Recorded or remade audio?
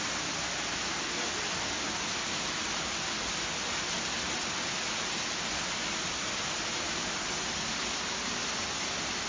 recorded